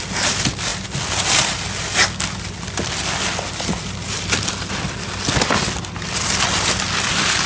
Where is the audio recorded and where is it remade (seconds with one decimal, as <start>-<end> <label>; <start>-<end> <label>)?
0.0-7.5 recorded